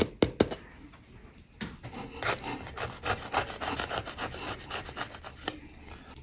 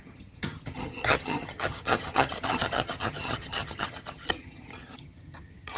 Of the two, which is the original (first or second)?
first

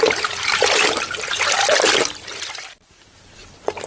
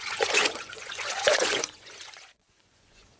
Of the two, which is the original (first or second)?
first